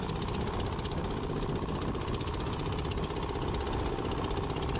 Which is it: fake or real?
real